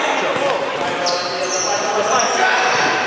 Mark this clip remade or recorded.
recorded